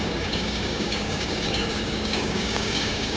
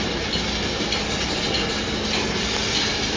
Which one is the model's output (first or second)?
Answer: first